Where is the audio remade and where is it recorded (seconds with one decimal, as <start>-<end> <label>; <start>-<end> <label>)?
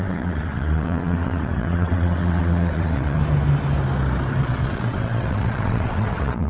0.0-3.2 remade; 3.2-4.4 recorded; 4.4-6.5 remade